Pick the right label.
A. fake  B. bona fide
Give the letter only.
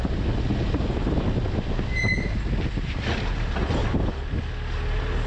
B